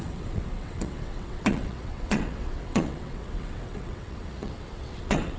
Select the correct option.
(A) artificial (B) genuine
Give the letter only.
A